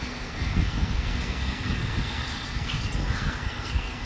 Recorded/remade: remade